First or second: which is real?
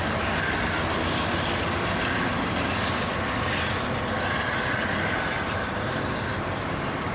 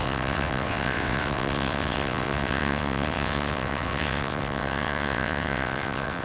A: first